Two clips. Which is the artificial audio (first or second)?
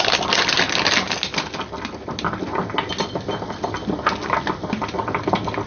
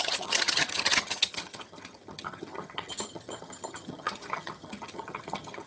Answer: second